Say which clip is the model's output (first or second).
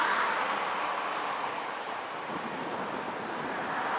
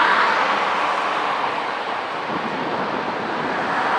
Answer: first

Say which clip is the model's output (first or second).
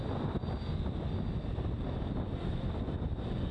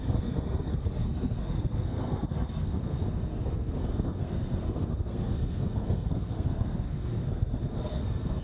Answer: second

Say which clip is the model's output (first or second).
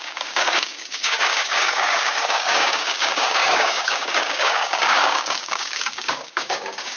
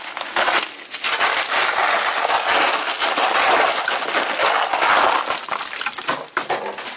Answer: first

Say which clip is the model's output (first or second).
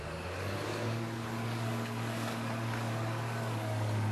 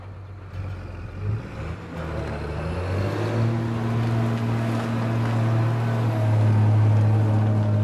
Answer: first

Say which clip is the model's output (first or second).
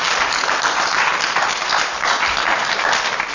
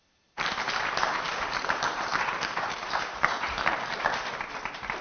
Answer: second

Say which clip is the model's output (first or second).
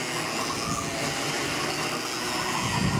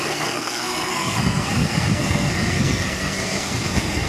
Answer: second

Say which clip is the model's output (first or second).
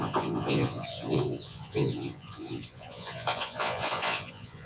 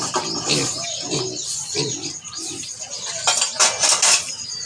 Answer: first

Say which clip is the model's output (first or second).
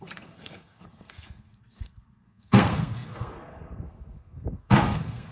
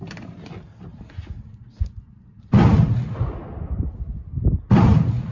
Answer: first